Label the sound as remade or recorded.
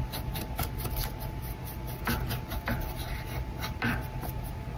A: recorded